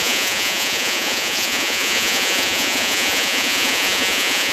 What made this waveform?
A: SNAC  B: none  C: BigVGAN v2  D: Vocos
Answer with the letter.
D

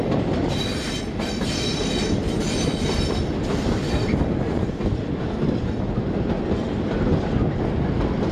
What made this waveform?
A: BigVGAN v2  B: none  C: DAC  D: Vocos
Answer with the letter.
B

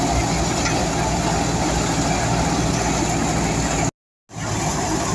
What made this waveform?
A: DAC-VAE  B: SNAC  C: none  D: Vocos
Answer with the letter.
C